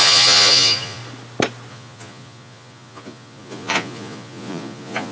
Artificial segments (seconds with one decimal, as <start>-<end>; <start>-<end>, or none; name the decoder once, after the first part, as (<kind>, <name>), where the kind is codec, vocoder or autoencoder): 0.0-1.0 (vocoder, Vocos); 1.7-5.1